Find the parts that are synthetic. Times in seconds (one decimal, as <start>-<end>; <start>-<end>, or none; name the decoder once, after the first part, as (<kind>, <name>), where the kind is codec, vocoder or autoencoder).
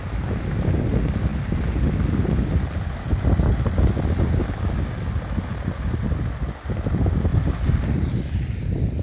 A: none